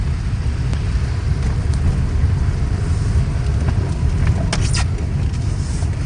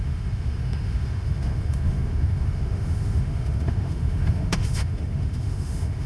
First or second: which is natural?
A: first